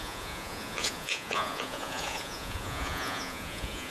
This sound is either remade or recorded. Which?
remade